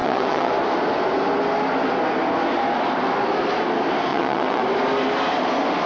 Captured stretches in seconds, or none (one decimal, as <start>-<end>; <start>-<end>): 0.5-4.1; 4.6-5.9